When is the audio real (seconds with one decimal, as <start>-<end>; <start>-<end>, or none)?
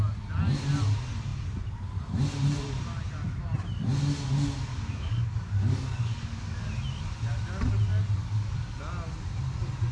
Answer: 0.0-4.7; 6.7-8.2; 8.8-9.9